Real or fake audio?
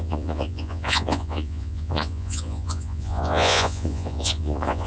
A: fake